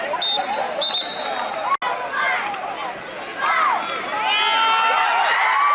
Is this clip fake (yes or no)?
no